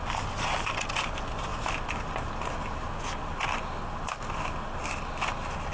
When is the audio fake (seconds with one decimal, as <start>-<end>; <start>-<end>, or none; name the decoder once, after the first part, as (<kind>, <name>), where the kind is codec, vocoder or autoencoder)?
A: none